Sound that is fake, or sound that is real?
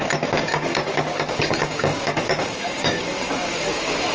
fake